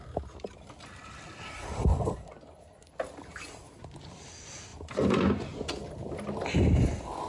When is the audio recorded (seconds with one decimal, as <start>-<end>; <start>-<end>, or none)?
0.0-7.3